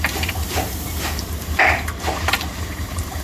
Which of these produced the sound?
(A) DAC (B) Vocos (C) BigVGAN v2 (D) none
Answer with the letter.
C